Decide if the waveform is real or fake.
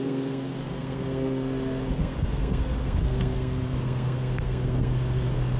fake